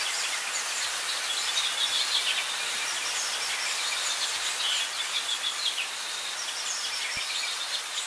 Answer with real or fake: real